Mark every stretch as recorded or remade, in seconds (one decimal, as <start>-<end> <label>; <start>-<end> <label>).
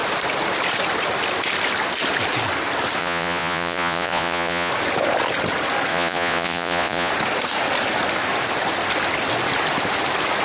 0.0-3.0 recorded; 3.0-4.7 remade; 4.7-5.9 recorded; 5.9-7.1 remade; 7.1-10.4 recorded